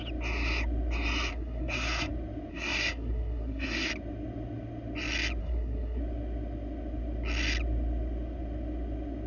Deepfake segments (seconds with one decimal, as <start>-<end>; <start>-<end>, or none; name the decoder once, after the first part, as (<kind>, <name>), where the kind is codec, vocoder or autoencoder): 1.3-2.1 (codec, SNAC); 2.5-3.9; 5.4-6.0